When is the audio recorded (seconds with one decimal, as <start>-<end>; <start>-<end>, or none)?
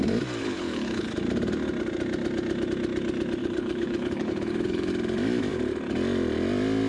0.0-0.4; 1.1-3.4; 4.9-6.9